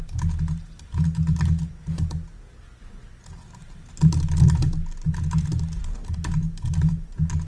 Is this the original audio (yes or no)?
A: yes